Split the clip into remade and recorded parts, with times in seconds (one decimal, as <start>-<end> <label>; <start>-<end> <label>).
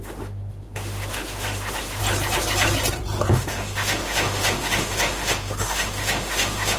0.0-2.0 remade; 2.0-3.3 recorded; 3.3-6.8 remade